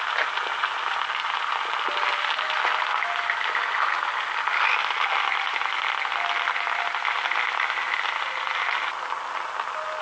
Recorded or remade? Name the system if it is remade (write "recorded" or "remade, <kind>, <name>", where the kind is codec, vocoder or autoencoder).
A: recorded